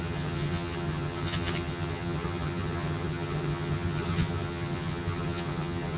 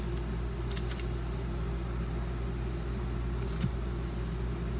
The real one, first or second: second